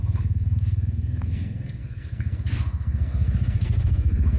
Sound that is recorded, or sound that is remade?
remade